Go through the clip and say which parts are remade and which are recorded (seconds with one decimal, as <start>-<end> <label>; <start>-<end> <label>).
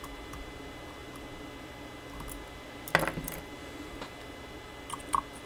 0.0-5.5 recorded